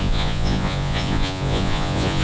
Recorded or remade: remade